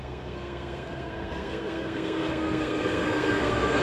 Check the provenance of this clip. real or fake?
fake